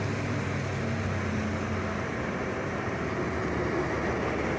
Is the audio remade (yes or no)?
no